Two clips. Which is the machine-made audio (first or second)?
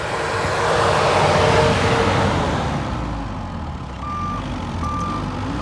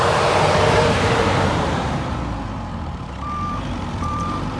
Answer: second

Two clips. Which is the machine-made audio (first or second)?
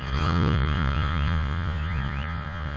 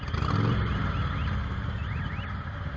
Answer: first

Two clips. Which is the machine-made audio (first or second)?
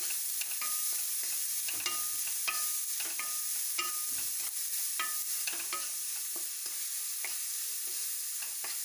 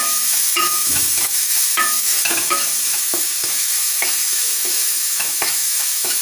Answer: second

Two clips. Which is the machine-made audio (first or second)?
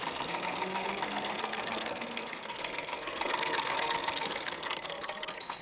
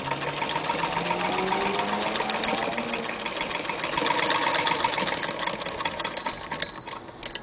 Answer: first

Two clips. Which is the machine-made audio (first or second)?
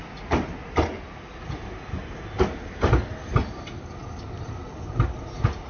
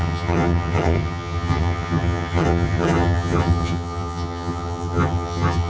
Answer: second